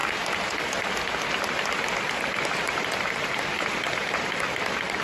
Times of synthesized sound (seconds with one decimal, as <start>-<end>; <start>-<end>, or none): 2.6-5.0